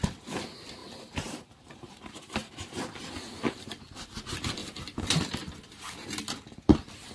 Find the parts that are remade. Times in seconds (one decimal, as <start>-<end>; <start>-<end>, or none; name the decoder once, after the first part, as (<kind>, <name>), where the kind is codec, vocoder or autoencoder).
0.8-2.5 (vocoder, BigVGAN v2); 4.6-5.2